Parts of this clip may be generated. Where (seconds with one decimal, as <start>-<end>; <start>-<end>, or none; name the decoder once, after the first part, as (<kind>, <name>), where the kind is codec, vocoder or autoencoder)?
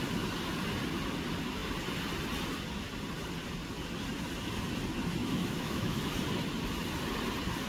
5.2-6.0 (autoencoder, DAC-VAE)